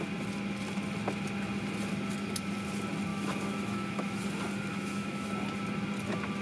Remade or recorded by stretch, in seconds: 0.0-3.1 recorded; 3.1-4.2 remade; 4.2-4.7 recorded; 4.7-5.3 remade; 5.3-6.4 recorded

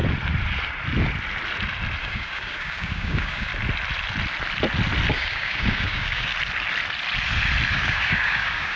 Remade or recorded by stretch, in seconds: 0.0-2.0 recorded; 2.0-3.5 remade; 3.5-5.1 recorded; 5.1-6.3 remade; 6.3-7.7 recorded; 7.7-8.8 remade

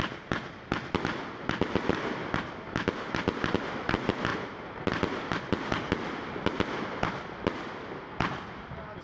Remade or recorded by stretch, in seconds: 0.0-9.0 recorded

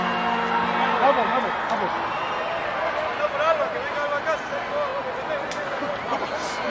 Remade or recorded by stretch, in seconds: 0.0-6.7 recorded

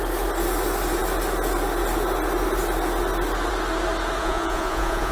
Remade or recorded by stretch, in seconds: 0.0-4.2 recorded; 4.2-5.1 remade

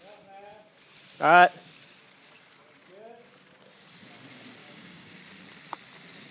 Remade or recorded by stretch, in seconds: 0.0-4.6 recorded; 4.6-5.2 remade; 5.2-6.3 recorded

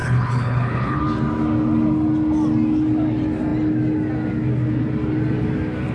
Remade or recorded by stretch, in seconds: 0.0-1.0 remade; 1.0-5.9 recorded